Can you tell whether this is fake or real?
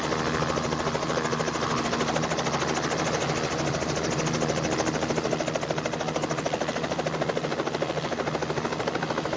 real